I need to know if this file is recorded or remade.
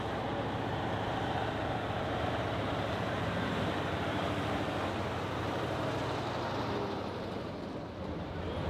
remade